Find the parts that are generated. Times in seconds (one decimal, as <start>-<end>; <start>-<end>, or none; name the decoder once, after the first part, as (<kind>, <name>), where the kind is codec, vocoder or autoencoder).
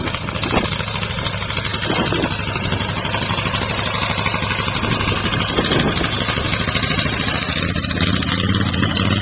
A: none